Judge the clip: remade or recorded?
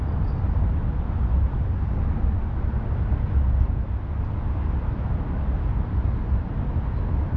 recorded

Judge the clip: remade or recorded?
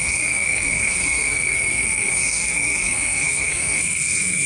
remade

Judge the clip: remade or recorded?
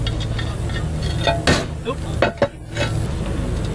recorded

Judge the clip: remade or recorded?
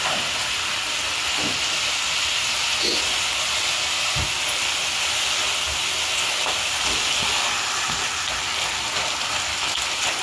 recorded